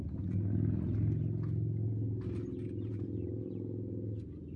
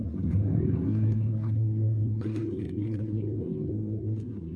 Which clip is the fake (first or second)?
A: second